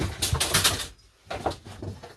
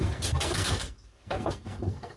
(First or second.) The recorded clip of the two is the first